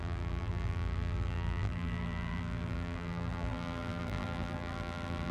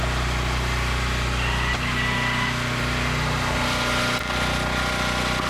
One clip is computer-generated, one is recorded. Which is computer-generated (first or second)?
first